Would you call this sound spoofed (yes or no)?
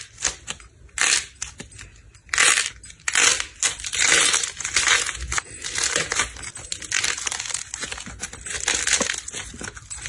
no